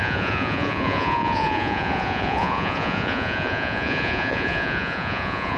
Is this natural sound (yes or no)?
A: no